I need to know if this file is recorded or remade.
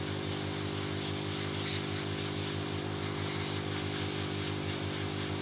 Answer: recorded